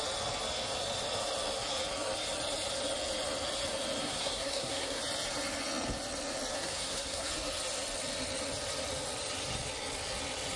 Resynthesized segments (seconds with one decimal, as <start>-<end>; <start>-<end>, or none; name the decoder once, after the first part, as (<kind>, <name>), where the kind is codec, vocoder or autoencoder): 4.0-5.0 (codec, SNAC); 6.5-7.3

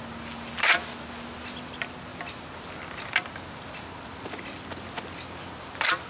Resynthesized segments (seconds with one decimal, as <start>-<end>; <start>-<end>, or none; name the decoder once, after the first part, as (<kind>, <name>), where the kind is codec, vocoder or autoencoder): none

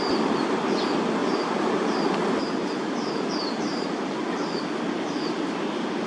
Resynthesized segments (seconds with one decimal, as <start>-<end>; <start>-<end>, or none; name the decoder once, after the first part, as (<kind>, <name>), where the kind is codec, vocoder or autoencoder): 1.2-4.2 (vocoder, BigVGAN v2)

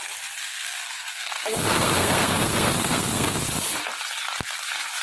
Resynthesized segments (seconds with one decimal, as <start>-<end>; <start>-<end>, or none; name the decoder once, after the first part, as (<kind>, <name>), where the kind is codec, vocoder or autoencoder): 0.4-3.4 (codec, SNAC)